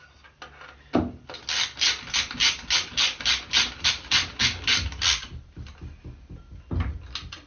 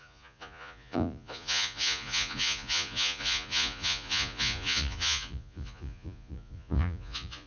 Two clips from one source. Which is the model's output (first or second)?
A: second